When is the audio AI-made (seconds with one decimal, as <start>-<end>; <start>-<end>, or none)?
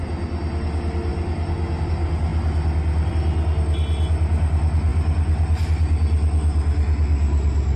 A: none